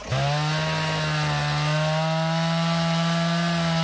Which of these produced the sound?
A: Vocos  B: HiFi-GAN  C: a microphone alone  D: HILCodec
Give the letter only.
C